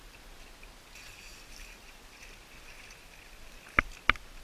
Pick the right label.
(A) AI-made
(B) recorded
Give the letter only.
B